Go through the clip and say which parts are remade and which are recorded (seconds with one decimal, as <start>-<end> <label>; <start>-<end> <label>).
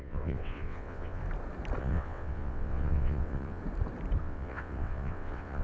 0.0-1.2 remade; 1.2-1.8 recorded; 1.8-3.6 remade; 3.6-4.2 recorded; 4.2-5.6 remade